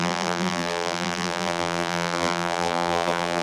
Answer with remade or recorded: remade